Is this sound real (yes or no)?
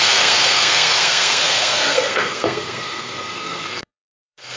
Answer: no